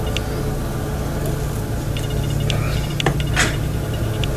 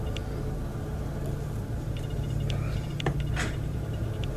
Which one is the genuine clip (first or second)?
first